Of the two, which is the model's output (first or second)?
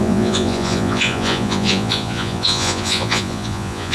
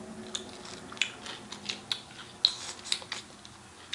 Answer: first